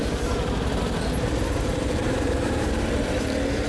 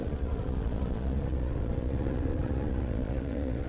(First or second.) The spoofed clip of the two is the second